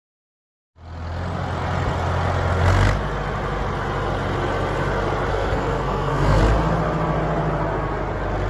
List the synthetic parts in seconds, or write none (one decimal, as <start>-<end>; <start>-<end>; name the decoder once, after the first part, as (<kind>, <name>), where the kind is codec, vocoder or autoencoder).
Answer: 5.3-6.4 (codec, SNAC)